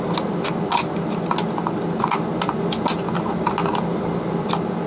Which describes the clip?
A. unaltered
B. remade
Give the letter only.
A